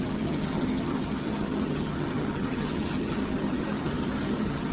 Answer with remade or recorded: remade